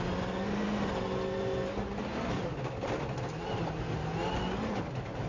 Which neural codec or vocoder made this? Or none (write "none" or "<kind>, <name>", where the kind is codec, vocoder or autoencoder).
none